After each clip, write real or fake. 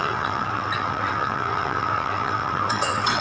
fake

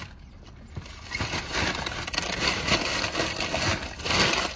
real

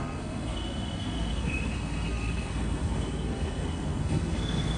fake